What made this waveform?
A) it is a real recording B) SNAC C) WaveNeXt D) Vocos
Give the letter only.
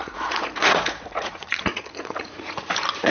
D